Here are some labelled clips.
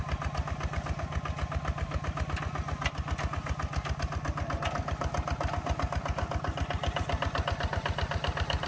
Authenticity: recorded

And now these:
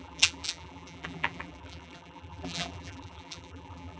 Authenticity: remade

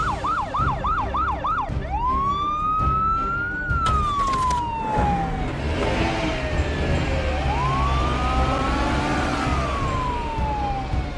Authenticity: recorded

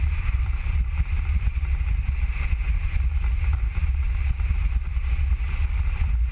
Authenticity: remade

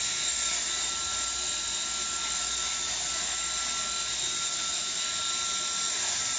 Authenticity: recorded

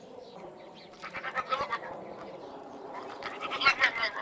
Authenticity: remade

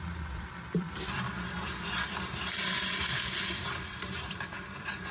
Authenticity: remade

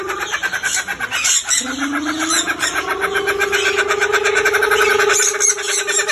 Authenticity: recorded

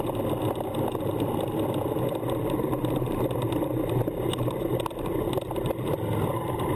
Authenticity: recorded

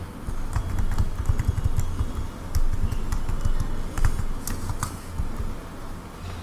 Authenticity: recorded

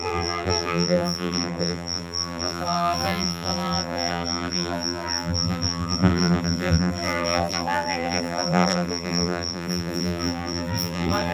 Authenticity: remade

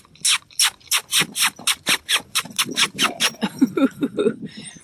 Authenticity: recorded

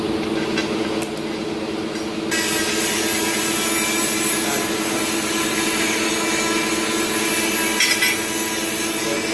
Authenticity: recorded